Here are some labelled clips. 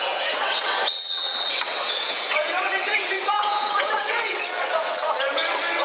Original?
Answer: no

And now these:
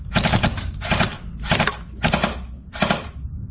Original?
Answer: yes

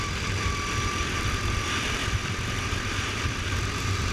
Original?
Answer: no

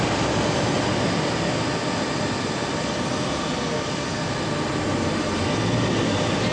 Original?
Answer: yes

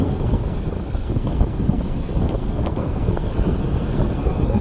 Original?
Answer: no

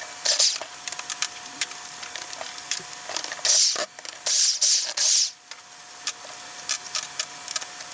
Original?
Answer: yes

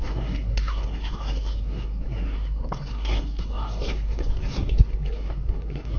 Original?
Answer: no